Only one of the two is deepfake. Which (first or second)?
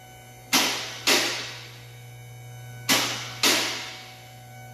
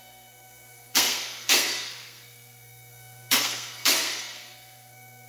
second